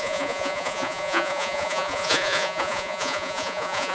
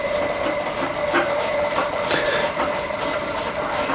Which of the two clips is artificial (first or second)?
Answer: first